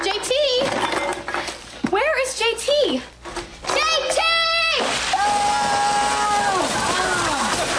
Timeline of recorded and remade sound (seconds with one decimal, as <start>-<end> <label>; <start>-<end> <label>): 0.0-7.8 recorded